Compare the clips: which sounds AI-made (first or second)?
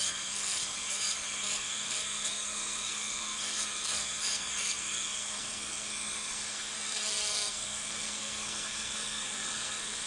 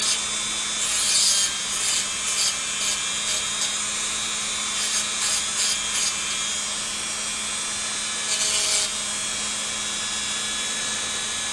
first